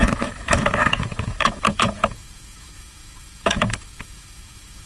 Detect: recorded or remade remade